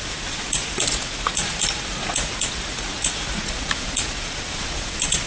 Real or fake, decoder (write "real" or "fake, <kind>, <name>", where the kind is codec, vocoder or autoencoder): fake, vocoder, Vocos